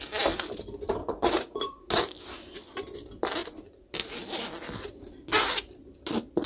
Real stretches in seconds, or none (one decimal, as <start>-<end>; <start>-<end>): 0.0-1.0; 1.9-3.4; 3.9-6.5

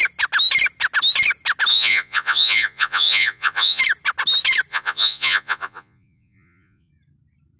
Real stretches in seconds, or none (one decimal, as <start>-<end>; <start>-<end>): 0.0-1.7; 3.8-4.7; 6.9-7.6

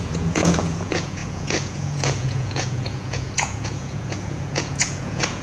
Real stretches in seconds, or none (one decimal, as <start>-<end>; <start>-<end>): none

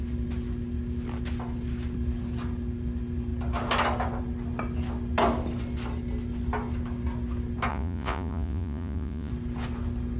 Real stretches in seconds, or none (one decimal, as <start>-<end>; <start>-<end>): 0.0-7.7; 9.3-10.2

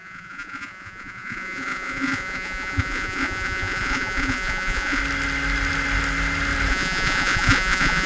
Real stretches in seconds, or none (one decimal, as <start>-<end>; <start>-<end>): 5.0-6.7

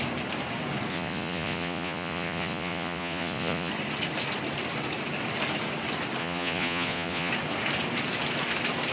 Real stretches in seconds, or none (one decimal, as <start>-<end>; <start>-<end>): 0.0-0.9; 3.7-6.2; 7.3-8.9

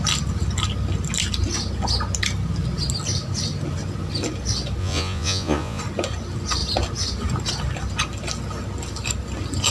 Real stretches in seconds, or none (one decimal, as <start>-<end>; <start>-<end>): 0.0-4.8; 5.8-9.7